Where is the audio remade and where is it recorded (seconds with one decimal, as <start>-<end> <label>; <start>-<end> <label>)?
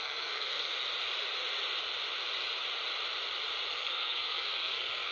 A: 0.0-0.7 remade; 0.7-3.7 recorded; 3.7-5.1 remade